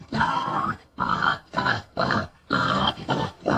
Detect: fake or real fake